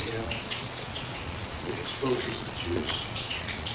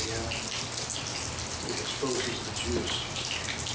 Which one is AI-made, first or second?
first